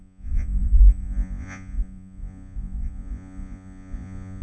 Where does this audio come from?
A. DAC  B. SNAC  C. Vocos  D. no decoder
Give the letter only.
C